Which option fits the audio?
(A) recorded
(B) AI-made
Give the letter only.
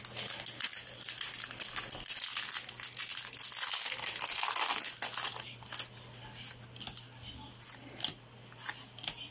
A